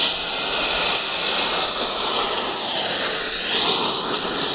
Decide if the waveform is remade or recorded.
recorded